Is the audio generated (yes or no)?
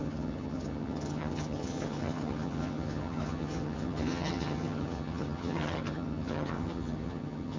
yes